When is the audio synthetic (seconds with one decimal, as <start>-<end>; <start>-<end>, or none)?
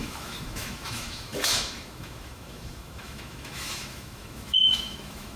0.0-5.4